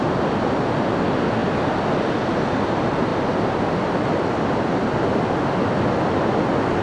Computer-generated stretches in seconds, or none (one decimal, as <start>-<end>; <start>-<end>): none